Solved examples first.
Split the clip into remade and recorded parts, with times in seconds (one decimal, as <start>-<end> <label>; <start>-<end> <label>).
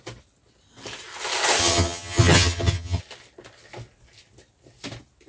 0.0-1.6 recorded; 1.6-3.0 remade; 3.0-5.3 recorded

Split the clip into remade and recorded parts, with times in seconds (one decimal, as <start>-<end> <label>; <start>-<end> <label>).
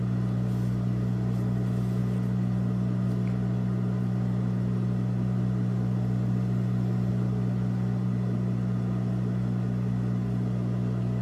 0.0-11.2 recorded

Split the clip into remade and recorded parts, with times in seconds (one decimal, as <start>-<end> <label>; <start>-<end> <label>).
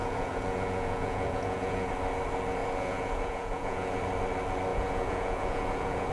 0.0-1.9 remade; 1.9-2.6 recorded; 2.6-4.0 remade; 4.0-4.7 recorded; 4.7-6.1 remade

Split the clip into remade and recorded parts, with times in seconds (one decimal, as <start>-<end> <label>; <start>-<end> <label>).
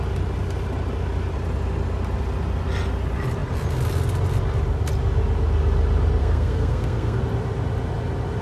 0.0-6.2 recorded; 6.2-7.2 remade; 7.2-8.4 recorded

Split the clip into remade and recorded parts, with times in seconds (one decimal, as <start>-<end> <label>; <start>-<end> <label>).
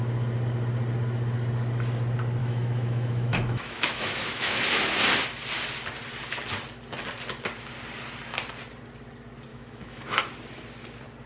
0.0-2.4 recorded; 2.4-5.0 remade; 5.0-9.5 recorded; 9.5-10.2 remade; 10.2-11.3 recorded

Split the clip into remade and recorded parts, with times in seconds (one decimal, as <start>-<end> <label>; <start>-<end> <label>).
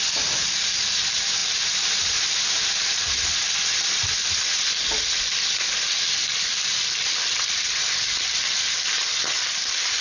0.0-10.0 recorded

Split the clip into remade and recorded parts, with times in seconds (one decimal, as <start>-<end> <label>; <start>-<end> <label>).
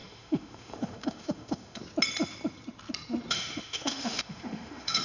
0.0-1.8 remade; 1.8-3.3 recorded; 3.3-5.0 remade